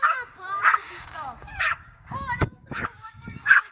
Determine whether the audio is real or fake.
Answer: fake